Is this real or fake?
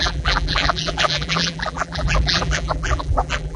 fake